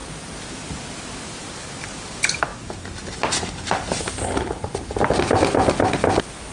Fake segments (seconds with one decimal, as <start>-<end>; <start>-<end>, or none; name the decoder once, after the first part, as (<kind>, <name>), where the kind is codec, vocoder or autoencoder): 0.0-0.5 (vocoder, BigVGAN v2)